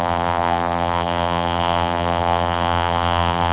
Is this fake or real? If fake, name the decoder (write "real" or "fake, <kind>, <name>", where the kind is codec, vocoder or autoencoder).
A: fake, vocoder, BigVGAN v2